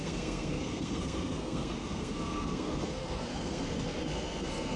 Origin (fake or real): fake